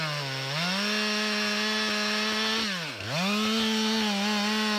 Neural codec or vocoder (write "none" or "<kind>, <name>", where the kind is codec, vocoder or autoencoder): none